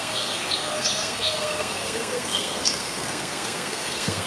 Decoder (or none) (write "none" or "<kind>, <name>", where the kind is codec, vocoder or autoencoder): codec, SNAC